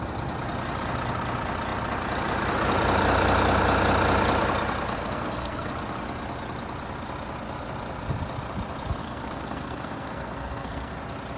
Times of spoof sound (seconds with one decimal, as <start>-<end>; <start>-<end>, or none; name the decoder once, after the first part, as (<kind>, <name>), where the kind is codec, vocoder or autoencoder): 4.9-5.7 (codec, SNAC); 9.0-11.0